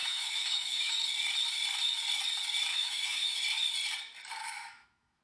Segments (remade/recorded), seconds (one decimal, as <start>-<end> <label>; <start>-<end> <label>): 0.0-0.9 remade; 0.9-2.7 recorded; 2.7-3.4 remade; 3.4-4.4 recorded; 4.4-5.2 remade